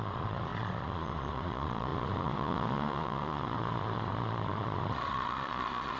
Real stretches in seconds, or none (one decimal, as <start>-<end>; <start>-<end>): none

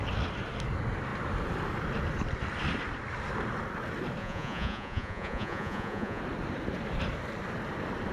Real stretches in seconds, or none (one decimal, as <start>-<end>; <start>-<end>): 0.0-4.2; 6.2-8.1

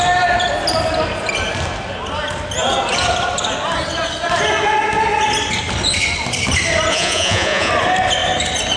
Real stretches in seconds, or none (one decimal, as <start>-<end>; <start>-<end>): 0.0-6.9; 7.7-8.8

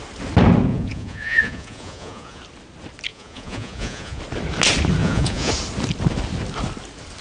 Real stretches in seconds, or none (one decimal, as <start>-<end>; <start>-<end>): 0.0-0.7; 2.4-3.1; 4.2-5.0; 5.5-7.2

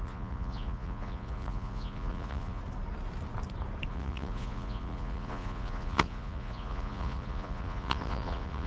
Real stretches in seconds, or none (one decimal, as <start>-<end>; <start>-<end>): 2.6-3.9

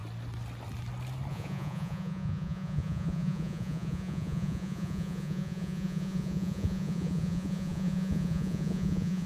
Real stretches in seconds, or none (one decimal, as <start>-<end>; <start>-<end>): 0.0-1.3

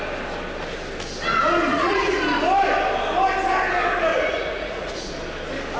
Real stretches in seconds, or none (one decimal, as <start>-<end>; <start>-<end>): 0.0-1.7; 2.2-4.1; 5.1-5.8

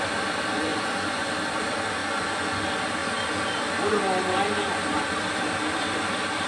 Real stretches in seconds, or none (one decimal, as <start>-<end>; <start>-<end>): 0.0-0.7; 1.3-2.0; 2.6-6.5